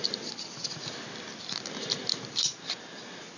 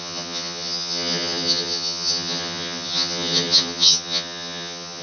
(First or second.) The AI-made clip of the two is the second